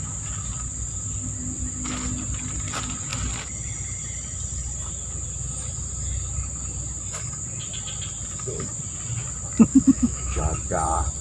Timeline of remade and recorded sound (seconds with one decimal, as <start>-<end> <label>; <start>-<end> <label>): 0.0-9.7 recorded; 9.7-10.4 remade; 10.4-11.2 recorded